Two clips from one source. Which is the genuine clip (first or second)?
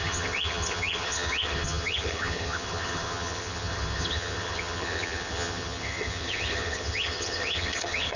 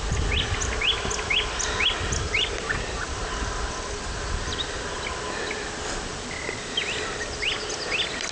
second